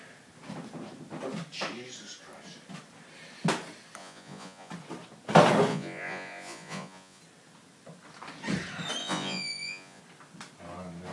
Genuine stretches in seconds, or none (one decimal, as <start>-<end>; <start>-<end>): 0.0-4.0; 4.7-5.7; 7.2-9.0; 10.0-11.1

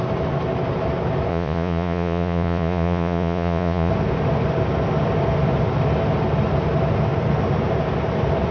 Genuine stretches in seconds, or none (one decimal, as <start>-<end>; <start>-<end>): 0.0-1.3; 3.9-8.5

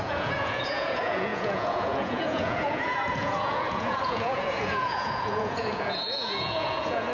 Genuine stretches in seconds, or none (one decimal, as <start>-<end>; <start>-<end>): none

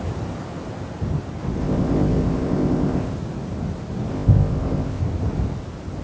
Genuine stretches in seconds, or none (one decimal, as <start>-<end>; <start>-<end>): 0.0-1.6; 3.1-4.1; 5.0-6.0